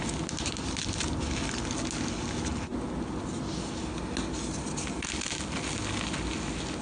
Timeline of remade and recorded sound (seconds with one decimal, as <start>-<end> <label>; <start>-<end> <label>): 0.0-6.8 recorded